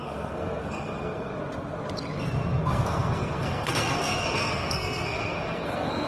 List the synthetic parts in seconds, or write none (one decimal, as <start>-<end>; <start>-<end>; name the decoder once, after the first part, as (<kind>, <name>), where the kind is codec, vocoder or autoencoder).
0.0-1.3 (codec, SNAC); 2.6-6.1